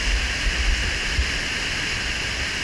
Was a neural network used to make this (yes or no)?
no